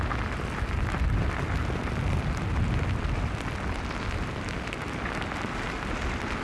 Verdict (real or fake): real